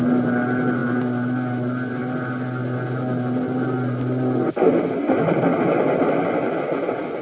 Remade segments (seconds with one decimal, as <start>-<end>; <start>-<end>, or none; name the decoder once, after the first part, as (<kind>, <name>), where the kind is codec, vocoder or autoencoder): none